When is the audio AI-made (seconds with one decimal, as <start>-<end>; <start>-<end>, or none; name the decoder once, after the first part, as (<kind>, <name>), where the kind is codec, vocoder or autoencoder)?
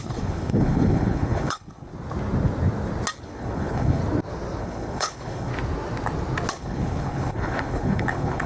0.0-1.9 (codec, HILCodec); 3.2-4.0; 4.6-5.5; 6.5-8.5